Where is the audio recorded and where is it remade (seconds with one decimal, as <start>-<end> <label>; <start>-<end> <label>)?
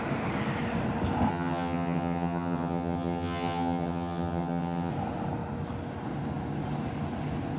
0.0-1.3 recorded; 1.3-4.9 remade; 4.9-7.6 recorded